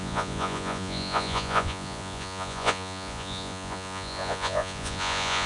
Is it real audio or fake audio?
fake